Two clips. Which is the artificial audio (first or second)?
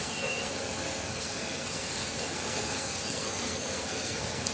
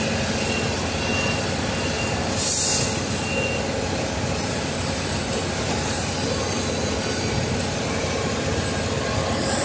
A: first